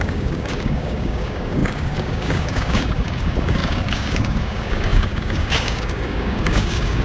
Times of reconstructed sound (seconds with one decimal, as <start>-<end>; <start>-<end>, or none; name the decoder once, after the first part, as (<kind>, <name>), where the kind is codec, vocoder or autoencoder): 0.0-7.0 (codec, DAC)